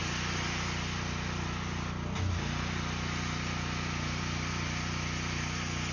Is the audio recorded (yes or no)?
yes